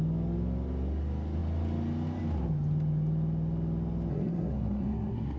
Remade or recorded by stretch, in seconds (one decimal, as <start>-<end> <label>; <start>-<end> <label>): 0.0-4.1 recorded; 4.1-5.4 remade